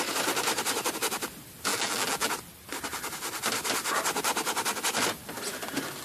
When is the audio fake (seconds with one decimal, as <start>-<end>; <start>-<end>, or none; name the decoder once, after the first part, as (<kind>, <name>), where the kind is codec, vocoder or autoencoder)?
1.7-2.3 (vocoder, BigVGAN v2)